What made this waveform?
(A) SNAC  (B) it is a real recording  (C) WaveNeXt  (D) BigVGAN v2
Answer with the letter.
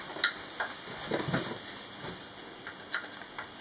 B